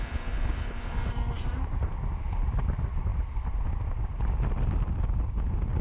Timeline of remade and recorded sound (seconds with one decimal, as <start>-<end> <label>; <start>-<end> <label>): 0.0-5.8 recorded